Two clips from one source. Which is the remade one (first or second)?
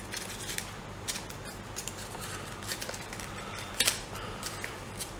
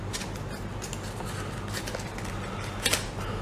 first